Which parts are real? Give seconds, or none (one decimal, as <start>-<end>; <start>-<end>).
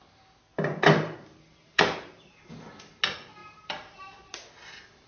0.0-0.5; 2.3-3.4; 4.0-5.1